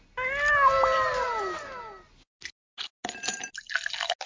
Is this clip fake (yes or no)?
no